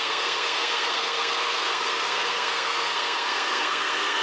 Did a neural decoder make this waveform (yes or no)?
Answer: yes